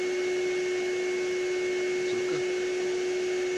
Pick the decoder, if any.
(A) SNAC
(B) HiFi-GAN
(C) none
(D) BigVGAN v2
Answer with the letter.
C